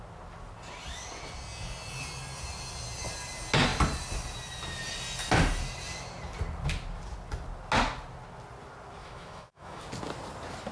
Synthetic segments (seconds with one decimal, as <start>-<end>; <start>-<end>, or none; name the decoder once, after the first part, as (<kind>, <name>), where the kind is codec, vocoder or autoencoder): 9.0-9.8 (autoencoder, DAC-VAE)